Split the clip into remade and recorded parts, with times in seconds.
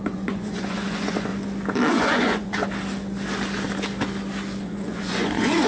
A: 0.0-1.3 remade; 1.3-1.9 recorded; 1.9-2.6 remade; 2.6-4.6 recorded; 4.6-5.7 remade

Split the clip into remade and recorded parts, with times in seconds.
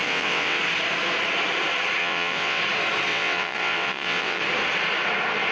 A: 0.0-0.6 remade; 0.6-2.0 recorded; 2.0-2.6 remade; 2.6-3.1 recorded; 3.1-4.4 remade; 4.4-5.5 recorded